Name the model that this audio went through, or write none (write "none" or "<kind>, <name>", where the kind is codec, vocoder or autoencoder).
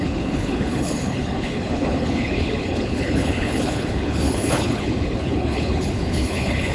codec, HILCodec